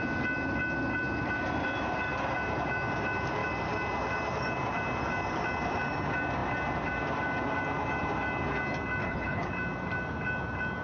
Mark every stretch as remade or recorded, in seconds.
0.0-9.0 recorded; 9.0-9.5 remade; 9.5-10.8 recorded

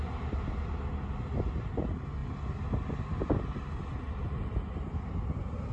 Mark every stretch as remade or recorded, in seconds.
0.0-5.7 recorded

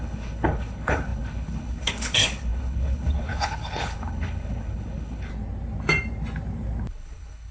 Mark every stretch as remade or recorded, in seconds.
0.0-5.3 remade; 5.3-6.9 recorded; 6.9-7.5 remade

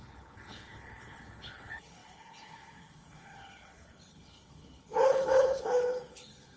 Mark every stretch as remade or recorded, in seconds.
0.0-6.6 remade